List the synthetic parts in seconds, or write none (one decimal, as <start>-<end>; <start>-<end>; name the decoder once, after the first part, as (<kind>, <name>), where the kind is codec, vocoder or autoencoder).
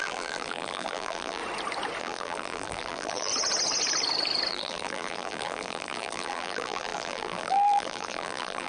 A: 0.0-1.4 (vocoder, BigVGAN v2); 2.0-3.3; 4.5-8.7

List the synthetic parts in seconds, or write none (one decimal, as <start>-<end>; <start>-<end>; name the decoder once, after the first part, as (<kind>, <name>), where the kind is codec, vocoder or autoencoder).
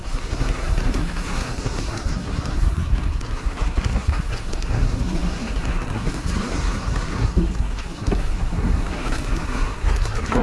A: 0.0-10.4 (codec, SNAC)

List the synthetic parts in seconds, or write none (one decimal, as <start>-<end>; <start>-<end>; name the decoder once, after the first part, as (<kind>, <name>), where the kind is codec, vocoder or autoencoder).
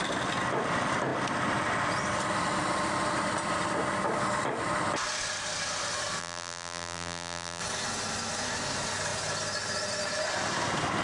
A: 6.2-7.6 (vocoder, BigVGAN v2)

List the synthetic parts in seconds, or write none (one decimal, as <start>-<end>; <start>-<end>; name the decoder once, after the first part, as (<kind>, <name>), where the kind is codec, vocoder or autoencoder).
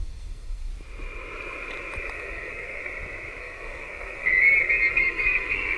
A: 0.0-0.7 (codec, SNAC); 2.1-2.8; 3.4-4.3; 4.9-5.8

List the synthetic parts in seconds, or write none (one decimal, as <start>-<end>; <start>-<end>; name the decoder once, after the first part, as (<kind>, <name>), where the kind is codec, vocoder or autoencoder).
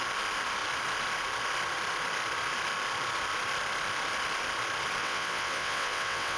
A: 5.0-6.4 (vocoder, WaveNeXt)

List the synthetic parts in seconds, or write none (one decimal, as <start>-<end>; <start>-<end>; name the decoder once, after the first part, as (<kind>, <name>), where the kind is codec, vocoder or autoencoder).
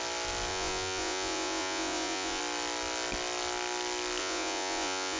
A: 0.5-2.4 (vocoder, Vocos); 4.2-5.2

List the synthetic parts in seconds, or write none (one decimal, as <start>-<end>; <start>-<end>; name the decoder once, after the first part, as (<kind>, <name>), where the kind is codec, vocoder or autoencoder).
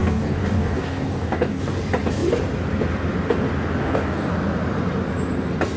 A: 0.0-1.6 (codec, DAC); 3.8-4.3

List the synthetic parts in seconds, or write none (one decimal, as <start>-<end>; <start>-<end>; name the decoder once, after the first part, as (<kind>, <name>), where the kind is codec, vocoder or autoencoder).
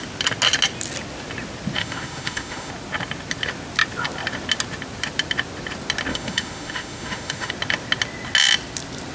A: 1.8-2.7 (autoencoder, DAC-VAE); 6.1-7.5